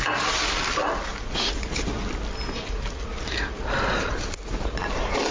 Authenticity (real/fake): real